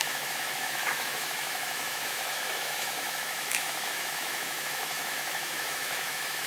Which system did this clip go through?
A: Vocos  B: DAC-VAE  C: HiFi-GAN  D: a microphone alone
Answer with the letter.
B